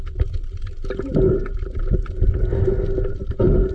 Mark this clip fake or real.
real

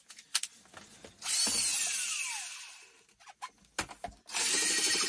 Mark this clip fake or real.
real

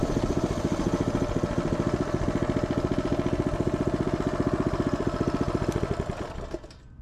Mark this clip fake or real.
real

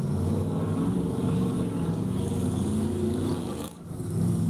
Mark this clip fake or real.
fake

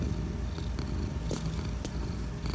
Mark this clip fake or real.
real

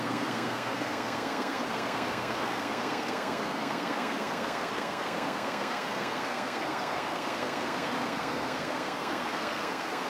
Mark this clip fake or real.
fake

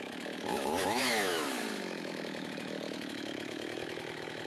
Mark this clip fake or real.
fake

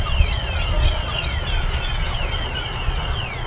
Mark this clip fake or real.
fake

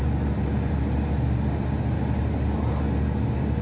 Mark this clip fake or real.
real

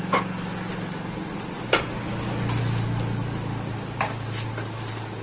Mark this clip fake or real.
real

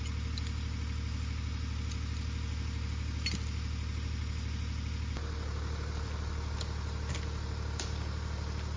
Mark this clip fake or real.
real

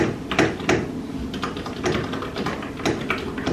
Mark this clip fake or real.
real